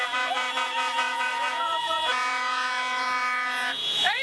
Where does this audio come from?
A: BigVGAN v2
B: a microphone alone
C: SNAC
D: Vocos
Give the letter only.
D